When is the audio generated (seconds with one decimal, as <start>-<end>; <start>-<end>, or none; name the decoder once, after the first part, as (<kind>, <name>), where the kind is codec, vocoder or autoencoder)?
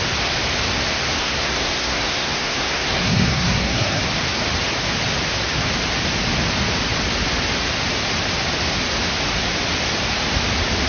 1.2-4.0 (codec, SNAC)